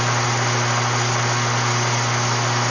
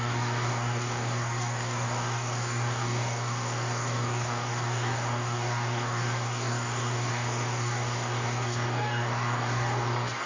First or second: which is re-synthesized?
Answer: second